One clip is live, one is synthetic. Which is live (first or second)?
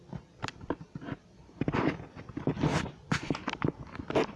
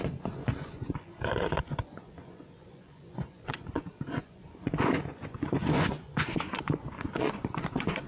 first